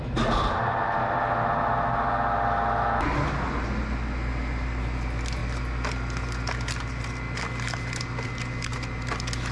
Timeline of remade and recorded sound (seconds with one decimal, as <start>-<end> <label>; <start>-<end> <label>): 0.0-9.5 recorded